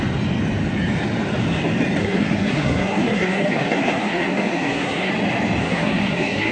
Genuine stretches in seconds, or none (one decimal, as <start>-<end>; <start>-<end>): 0.0-2.0; 5.1-5.6